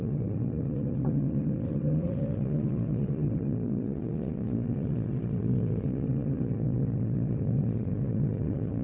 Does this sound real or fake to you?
fake